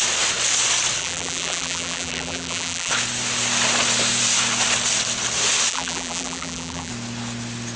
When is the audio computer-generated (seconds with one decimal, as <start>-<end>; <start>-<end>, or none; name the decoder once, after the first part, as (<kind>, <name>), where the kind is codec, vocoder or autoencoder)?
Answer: 1.0-2.9 (vocoder, BigVGAN v2); 5.7-6.9